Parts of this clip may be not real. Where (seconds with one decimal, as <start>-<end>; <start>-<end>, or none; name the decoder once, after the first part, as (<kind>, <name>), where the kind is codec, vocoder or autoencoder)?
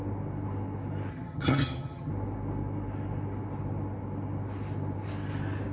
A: 1.1-2.1 (vocoder, HiFi-GAN)